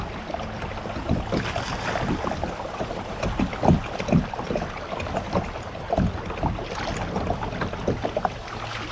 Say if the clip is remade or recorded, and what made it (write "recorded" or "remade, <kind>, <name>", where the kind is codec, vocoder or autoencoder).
recorded